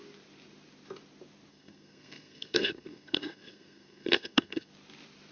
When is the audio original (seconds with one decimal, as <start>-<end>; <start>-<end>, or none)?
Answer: 0.0-1.5; 4.7-5.3